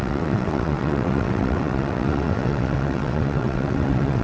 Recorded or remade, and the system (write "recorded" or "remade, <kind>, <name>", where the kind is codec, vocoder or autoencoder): remade, vocoder, WaveNeXt